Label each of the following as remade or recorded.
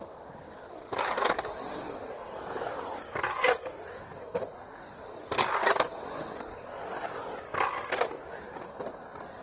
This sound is recorded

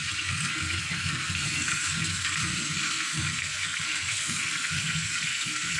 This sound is remade